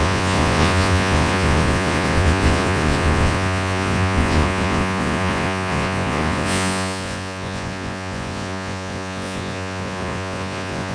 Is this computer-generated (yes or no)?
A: yes